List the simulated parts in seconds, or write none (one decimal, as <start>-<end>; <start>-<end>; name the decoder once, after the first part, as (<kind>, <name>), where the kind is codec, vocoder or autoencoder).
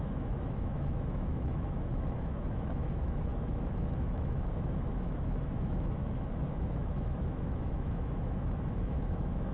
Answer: 0.0-9.5 (autoencoder, DAC-VAE)